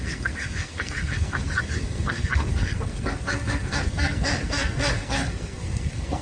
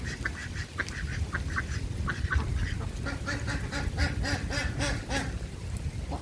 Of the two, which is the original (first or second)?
second